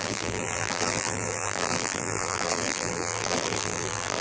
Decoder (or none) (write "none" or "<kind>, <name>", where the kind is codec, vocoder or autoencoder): vocoder, BigVGAN v2